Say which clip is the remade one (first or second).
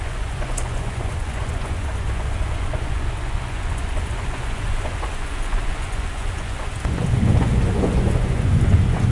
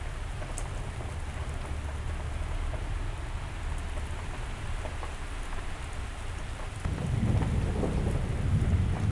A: first